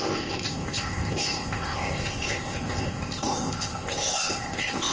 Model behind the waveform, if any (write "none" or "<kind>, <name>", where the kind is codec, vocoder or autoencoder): codec, ZipCodec